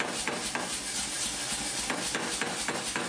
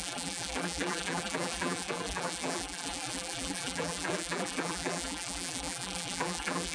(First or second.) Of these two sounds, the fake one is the second